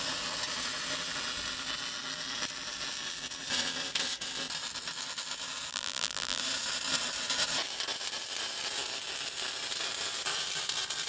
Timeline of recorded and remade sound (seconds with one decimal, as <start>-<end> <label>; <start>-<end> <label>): 0.0-5.7 recorded; 5.7-6.4 remade; 6.4-11.1 recorded